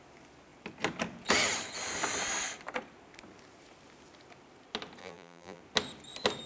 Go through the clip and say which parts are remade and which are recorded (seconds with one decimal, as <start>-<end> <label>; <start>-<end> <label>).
0.0-5.0 recorded; 5.0-5.6 remade; 5.6-6.5 recorded